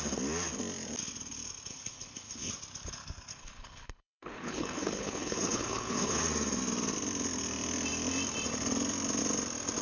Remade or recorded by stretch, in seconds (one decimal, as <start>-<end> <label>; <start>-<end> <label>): 0.0-1.7 recorded; 1.7-2.5 remade; 2.5-3.3 recorded; 3.3-6.2 remade; 6.2-9.8 recorded